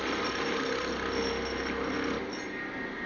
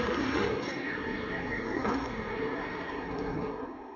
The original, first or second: first